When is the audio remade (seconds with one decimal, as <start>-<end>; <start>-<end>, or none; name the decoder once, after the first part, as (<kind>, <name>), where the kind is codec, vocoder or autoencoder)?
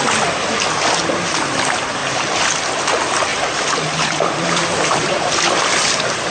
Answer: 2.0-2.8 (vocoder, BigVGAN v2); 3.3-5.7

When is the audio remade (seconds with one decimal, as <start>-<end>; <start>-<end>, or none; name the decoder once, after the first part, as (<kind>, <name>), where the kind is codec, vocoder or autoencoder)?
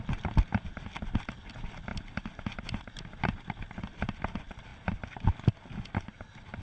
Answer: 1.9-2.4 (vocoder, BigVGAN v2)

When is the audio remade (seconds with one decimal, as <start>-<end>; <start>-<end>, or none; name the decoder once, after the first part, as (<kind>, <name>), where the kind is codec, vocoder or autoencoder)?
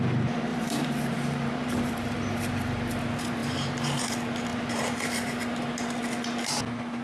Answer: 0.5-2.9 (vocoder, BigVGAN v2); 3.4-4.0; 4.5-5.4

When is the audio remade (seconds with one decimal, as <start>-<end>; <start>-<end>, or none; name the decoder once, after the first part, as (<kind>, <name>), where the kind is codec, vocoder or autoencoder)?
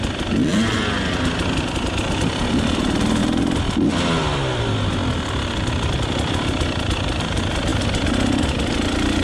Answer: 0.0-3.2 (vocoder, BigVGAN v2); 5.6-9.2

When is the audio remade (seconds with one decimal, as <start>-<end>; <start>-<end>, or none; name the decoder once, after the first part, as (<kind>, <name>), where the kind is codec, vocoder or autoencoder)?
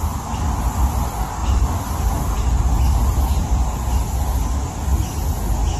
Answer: 1.4-2.6 (vocoder, BigVGAN v2); 3.3-3.9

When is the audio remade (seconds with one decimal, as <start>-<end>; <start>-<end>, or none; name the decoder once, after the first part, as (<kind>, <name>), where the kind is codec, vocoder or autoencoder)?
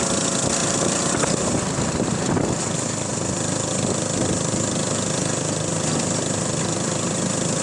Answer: 0.6-2.5 (vocoder, BigVGAN v2)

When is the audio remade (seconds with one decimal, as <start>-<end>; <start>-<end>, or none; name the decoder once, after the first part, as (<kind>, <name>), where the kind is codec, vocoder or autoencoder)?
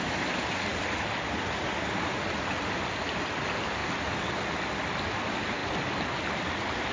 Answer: none